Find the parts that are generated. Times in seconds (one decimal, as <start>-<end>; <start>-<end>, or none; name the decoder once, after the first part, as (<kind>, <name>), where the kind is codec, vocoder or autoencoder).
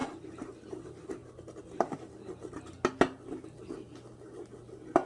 none